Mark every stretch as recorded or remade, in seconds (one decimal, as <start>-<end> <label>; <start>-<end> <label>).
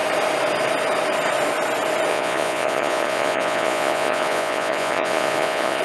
0.0-2.1 recorded; 2.1-5.8 remade